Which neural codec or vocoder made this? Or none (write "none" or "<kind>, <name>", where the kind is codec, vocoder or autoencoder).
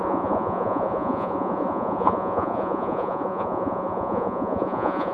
vocoder, Vocos